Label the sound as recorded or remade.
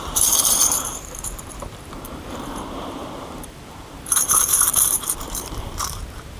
remade